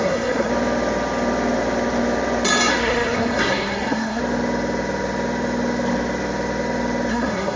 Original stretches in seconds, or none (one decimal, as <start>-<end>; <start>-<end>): 0.5-2.7; 4.2-7.1

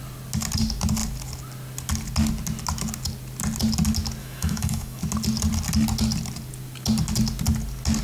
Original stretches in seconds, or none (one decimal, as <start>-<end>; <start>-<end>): 0.0-4.2; 5.0-8.0

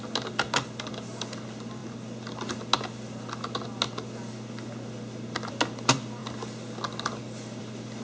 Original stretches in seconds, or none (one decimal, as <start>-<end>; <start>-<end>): 0.0-8.0

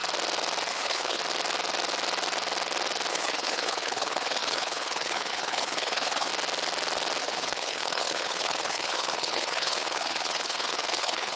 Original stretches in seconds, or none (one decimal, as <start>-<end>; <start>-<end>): 0.0-0.7; 1.2-3.1; 6.3-7.2

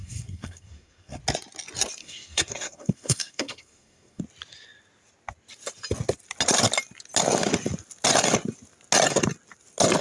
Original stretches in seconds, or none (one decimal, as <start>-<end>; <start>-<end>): 1.2-2.0; 4.2-10.0

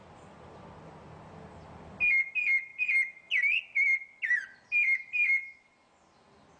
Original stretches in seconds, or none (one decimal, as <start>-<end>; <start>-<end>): 0.0-6.6

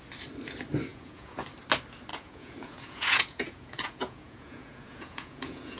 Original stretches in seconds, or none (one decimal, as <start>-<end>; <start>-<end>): 0.0-0.9; 1.4-2.1